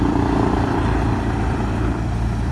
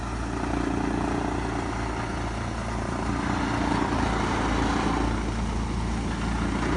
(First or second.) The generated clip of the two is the first